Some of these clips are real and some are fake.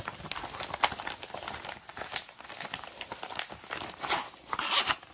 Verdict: real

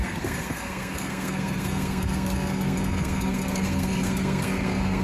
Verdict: fake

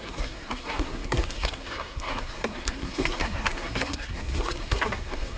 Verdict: fake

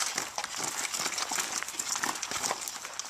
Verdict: real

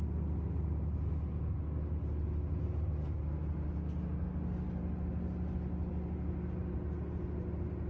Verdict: real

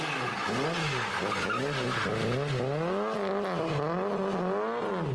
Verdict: real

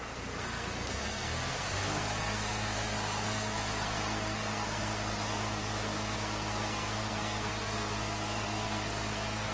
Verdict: fake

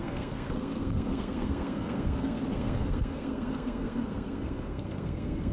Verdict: fake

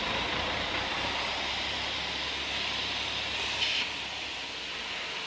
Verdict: real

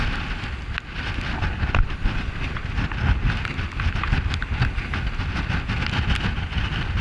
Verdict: real